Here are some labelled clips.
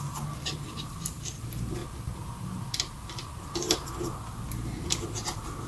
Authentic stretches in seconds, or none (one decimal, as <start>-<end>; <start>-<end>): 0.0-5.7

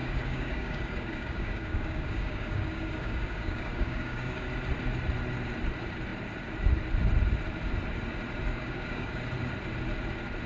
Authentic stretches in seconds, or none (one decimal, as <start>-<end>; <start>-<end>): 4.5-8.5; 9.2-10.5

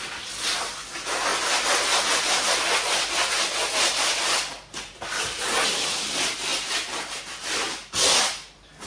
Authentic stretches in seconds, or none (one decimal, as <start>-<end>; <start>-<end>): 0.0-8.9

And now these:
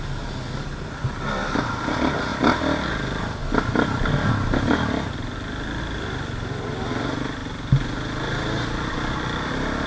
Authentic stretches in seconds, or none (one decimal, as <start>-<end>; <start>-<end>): 0.0-9.9

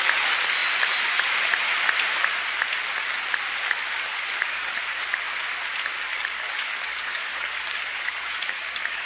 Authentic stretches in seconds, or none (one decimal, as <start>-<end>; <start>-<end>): 0.0-4.1; 4.8-6.1

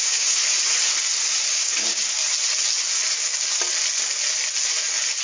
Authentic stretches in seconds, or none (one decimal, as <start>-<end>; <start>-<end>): 0.4-1.5; 2.2-5.2